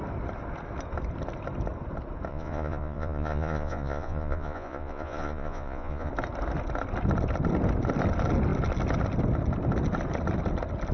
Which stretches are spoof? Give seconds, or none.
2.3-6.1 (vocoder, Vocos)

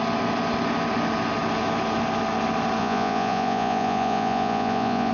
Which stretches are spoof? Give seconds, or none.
2.8-5.1 (vocoder, Vocos)